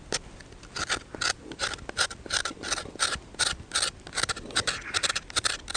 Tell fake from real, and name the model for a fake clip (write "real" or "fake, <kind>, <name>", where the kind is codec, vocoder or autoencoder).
real